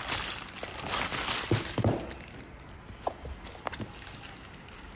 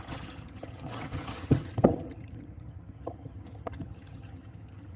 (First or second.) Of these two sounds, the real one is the first